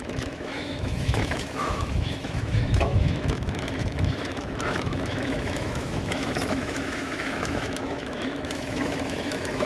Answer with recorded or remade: remade